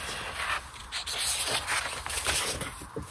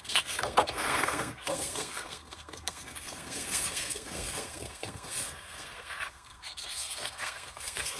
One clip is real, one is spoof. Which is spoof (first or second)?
second